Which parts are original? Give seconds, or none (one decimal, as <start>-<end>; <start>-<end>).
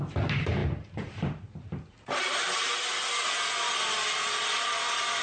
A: 0.0-5.2